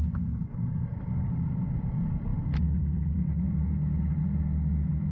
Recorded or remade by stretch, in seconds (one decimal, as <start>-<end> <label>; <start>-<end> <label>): 0.0-5.1 recorded